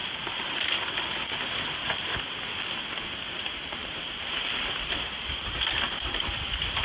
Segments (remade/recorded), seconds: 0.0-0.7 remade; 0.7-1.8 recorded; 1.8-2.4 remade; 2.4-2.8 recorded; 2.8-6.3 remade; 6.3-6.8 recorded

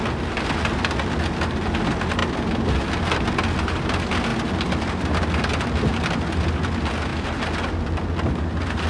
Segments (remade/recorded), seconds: 0.0-8.9 recorded

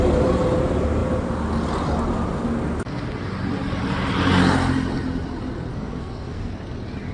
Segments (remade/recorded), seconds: 0.0-5.7 recorded; 5.7-6.5 remade; 6.5-7.1 recorded

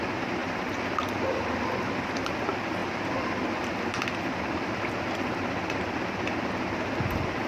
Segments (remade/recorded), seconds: 0.0-0.4 recorded; 0.4-1.9 remade; 1.9-2.8 recorded; 2.8-6.5 remade; 6.5-7.5 recorded

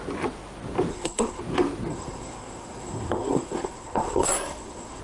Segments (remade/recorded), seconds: 0.0-0.9 recorded; 0.9-1.4 remade; 1.4-1.9 recorded; 1.9-5.0 remade

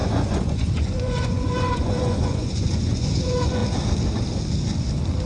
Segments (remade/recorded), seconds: 0.0-3.6 remade; 3.6-5.3 recorded